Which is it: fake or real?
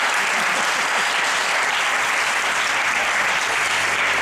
real